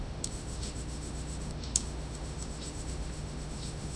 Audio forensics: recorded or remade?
remade